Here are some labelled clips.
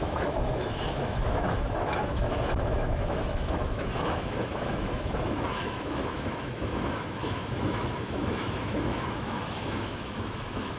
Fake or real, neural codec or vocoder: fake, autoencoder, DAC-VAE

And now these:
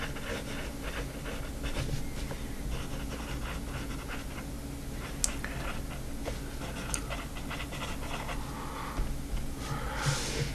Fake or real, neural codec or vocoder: real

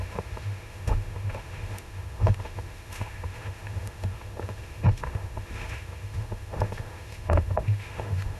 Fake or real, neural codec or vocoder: fake, autoencoder, DAC-VAE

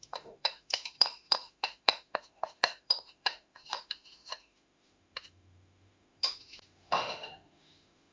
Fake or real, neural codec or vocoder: fake, autoencoder, DAC-VAE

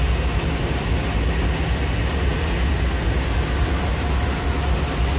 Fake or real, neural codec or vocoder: real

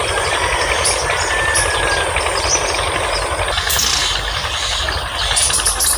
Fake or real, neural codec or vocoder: real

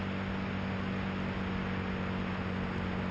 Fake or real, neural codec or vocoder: real